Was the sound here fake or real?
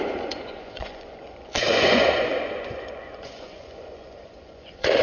fake